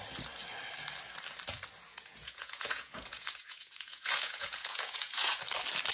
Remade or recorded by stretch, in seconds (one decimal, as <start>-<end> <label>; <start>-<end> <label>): 0.0-1.9 recorded; 1.9-5.4 remade; 5.4-5.9 recorded